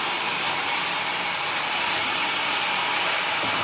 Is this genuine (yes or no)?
yes